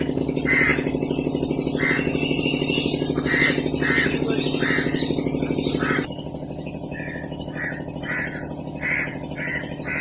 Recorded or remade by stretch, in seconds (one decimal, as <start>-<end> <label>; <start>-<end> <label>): 0.0-10.0 recorded